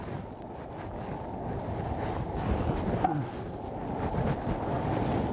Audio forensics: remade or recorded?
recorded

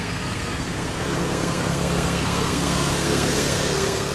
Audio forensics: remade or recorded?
remade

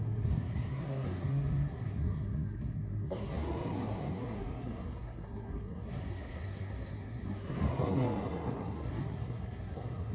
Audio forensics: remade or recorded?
remade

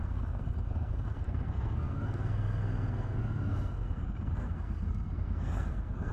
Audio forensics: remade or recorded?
remade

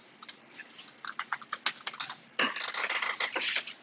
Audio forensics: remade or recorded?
recorded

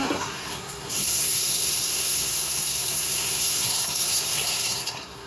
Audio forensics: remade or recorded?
remade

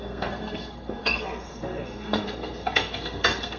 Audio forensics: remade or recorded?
remade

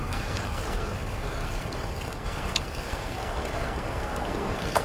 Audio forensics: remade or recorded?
remade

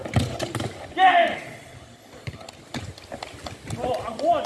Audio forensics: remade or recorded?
recorded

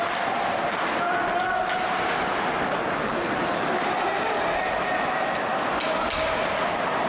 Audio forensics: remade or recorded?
recorded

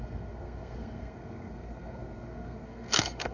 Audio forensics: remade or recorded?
remade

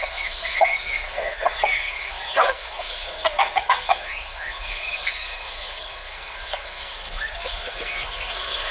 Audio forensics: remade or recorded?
remade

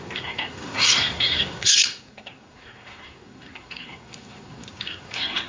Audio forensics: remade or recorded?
remade